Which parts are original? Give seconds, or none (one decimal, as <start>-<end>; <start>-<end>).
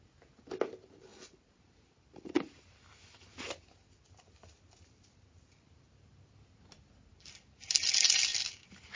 0.0-9.0